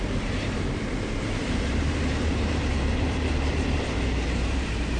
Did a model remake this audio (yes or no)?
yes